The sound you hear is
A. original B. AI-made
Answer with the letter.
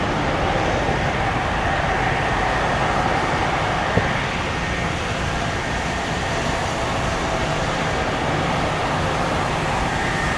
A